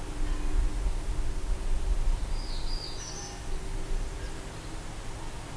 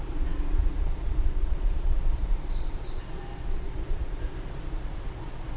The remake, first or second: second